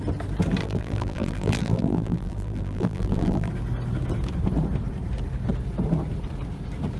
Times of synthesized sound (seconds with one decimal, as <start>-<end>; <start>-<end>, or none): 0.6-3.5